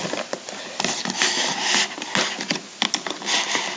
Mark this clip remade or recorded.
recorded